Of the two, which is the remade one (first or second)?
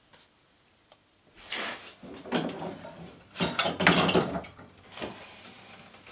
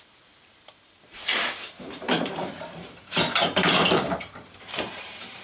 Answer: second